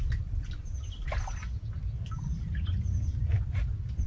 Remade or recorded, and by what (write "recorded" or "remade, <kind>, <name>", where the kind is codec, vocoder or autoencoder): recorded